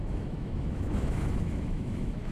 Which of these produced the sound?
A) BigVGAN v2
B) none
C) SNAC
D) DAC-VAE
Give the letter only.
D